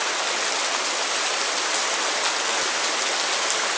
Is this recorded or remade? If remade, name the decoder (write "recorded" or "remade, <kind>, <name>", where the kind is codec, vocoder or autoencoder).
recorded